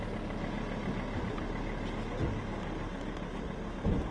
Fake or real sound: real